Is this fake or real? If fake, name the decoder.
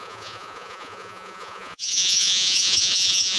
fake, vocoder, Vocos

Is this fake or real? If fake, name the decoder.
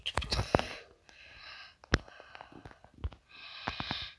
real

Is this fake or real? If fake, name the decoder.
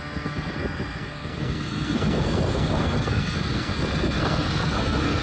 fake, codec, SNAC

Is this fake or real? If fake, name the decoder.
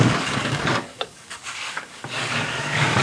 fake, codec, DAC